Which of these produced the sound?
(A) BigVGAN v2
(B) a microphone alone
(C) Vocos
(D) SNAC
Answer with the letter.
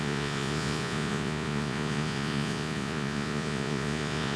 C